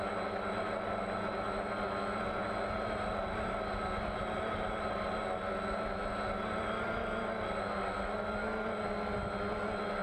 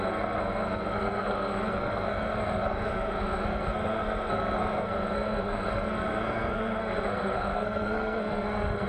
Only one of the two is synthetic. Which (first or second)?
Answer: second